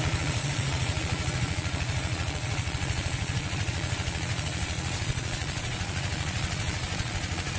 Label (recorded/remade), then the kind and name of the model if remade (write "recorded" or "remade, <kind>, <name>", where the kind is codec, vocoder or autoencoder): remade, vocoder, Vocos